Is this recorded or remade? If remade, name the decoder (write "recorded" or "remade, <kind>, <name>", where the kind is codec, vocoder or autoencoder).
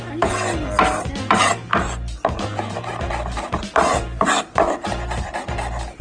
recorded